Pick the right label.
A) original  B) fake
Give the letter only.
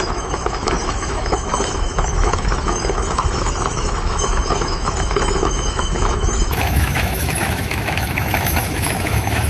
B